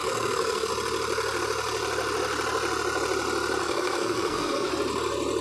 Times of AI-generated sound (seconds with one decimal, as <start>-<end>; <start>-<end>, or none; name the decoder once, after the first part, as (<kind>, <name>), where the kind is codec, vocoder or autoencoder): 0.0-0.7 (codec, SNAC); 3.6-4.7